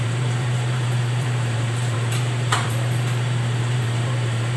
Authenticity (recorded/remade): remade